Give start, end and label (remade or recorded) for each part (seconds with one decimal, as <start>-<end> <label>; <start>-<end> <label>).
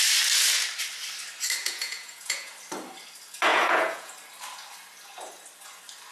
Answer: 0.0-1.6 recorded; 1.6-2.5 remade; 2.5-3.5 recorded; 3.5-4.1 remade; 4.1-6.1 recorded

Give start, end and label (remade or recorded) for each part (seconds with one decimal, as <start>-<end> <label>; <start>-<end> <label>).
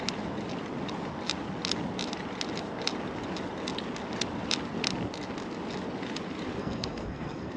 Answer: 0.0-6.6 recorded; 6.6-7.6 remade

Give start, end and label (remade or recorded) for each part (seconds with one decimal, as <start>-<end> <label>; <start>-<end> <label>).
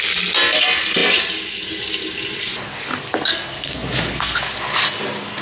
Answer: 0.0-3.0 recorded; 3.0-4.4 remade; 4.4-5.4 recorded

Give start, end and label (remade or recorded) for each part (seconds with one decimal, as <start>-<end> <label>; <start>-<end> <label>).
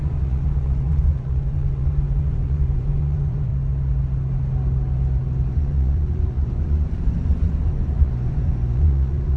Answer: 0.0-3.5 remade; 3.5-5.5 recorded; 5.5-9.4 remade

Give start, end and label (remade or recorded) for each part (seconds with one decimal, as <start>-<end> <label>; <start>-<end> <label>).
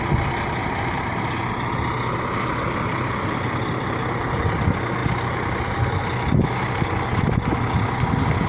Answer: 0.0-0.6 recorded; 0.6-1.5 remade; 1.5-5.0 recorded; 5.0-6.0 remade; 6.0-8.5 recorded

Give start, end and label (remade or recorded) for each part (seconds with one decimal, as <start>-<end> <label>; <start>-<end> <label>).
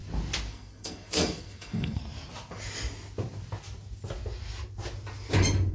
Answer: 0.0-0.5 recorded; 0.5-2.0 remade; 2.0-5.7 recorded